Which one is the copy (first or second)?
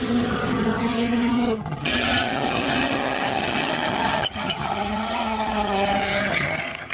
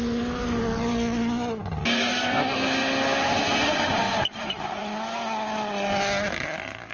first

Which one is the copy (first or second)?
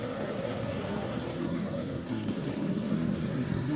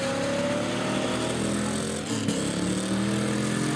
first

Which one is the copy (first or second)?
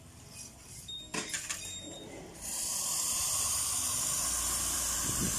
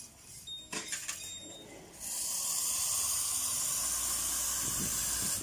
first